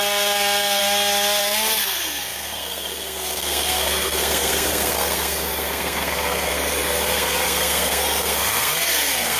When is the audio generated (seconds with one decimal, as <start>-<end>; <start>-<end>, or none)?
0.0-0.8; 1.4-9.4